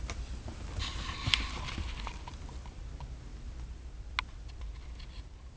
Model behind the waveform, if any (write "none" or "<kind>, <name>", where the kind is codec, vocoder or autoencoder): none